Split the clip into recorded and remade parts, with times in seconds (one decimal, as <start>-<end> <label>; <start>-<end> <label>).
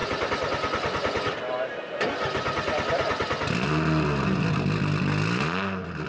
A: 0.0-6.1 recorded